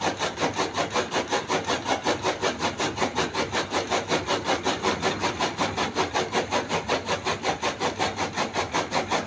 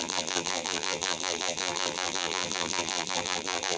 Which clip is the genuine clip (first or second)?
first